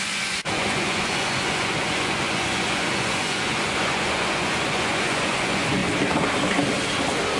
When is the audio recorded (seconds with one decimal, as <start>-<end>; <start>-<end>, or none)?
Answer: 5.8-7.4